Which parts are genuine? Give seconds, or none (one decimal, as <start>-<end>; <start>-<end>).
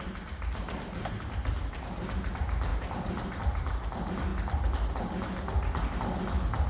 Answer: 0.0-2.7; 3.4-4.3; 4.9-6.7